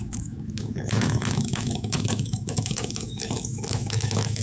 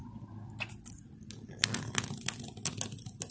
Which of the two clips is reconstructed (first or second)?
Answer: first